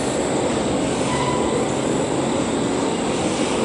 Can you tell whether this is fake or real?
real